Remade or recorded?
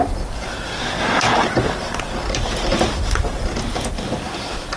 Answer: recorded